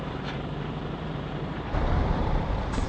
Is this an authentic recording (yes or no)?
no